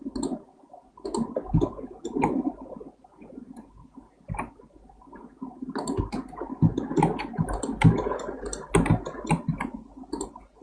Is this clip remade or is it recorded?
recorded